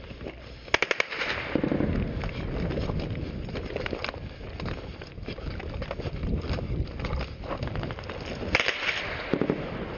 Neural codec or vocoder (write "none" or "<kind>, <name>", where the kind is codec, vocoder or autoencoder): none